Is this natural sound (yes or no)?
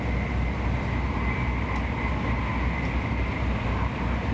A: yes